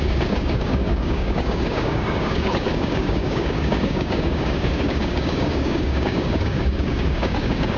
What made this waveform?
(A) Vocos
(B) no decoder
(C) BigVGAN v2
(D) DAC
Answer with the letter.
D